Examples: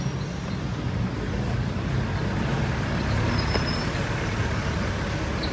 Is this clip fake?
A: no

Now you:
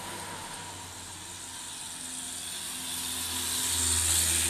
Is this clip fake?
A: no